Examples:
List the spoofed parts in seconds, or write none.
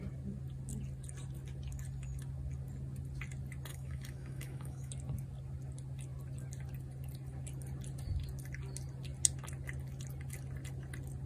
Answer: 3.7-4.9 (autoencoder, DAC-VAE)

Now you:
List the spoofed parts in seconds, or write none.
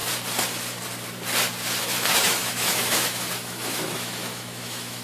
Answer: 1.8-5.0 (autoencoder, DAC-VAE)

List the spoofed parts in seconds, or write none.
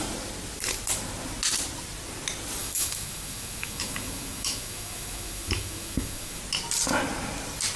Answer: 2.6-6.4 (autoencoder, DAC-VAE)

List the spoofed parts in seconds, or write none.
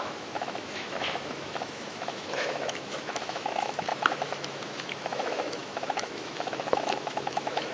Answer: 0.0-7.7 (autoencoder, DAC-VAE)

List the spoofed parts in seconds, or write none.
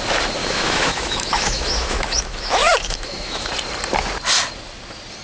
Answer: 0.4-3.5 (autoencoder, DAC-VAE)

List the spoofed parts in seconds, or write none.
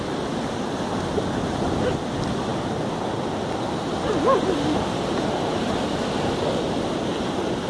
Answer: none